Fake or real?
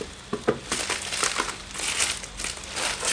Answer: real